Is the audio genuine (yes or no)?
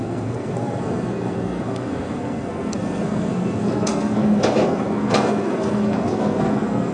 no